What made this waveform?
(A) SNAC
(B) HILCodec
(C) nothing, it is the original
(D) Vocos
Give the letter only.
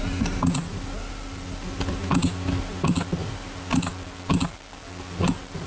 C